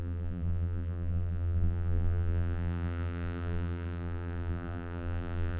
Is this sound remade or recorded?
remade